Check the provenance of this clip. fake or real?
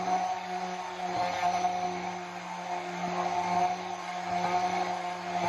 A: real